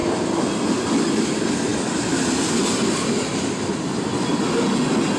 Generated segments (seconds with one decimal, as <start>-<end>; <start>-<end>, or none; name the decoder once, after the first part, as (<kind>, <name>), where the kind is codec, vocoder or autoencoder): none